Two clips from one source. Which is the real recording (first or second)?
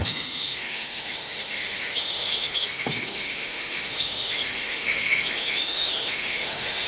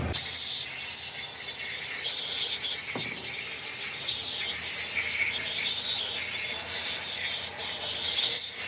second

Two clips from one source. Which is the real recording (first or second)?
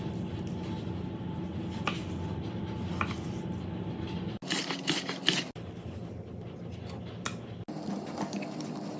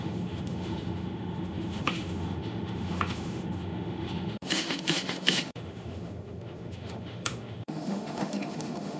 first